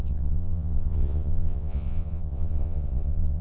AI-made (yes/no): yes